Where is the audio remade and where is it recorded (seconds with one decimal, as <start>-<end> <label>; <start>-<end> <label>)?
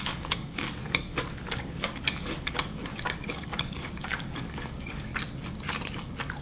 0.0-5.1 remade; 5.1-6.4 recorded